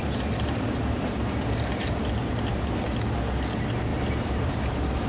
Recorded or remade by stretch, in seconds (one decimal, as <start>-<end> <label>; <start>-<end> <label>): 0.0-3.9 recorded; 3.9-4.6 remade; 4.6-5.1 recorded